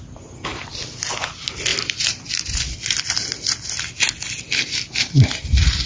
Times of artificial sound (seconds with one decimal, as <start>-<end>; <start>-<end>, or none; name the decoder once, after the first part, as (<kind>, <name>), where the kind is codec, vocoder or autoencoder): none